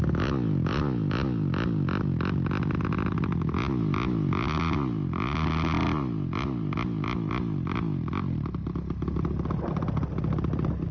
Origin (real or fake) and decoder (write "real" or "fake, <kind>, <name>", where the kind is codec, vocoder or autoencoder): real